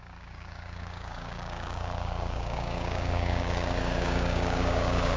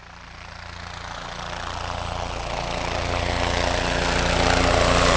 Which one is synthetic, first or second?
first